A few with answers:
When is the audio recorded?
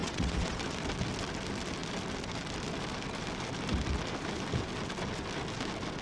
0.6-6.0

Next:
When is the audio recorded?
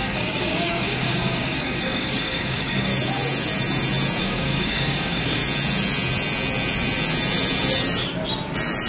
2.9-4.2; 5.4-8.9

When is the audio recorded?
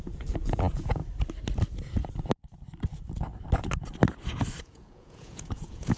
1.0-4.6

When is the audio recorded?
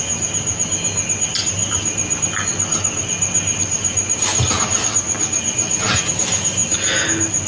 0.0-1.6; 6.1-7.5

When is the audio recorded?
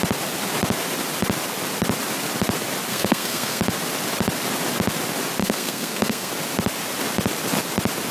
0.0-2.9; 3.6-5.4; 6.3-8.1